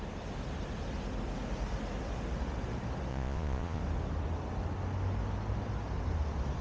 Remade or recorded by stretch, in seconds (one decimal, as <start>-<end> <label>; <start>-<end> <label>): 0.0-3.1 recorded; 3.1-3.8 remade; 3.8-6.6 recorded